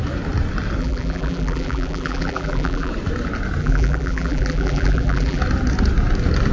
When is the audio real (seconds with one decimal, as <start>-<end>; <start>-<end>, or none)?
0.0-0.8; 2.9-3.6; 5.4-6.5